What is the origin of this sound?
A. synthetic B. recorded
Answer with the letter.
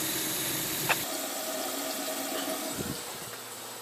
B